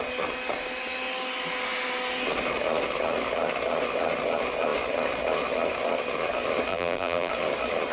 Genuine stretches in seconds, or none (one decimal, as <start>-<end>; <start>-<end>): 0.0-6.7; 7.3-7.9